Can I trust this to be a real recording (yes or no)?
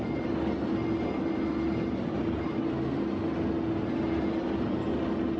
yes